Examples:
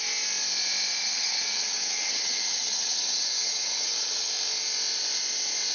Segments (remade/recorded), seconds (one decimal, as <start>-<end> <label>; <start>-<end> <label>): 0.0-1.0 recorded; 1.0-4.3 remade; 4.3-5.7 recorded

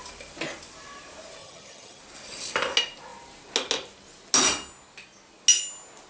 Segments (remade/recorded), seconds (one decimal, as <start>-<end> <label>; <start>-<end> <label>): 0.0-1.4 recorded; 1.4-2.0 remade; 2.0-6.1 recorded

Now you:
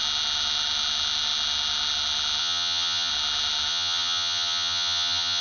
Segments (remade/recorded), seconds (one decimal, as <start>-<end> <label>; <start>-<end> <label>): 0.0-2.4 recorded; 2.4-3.1 remade; 3.1-3.7 recorded; 3.7-5.4 remade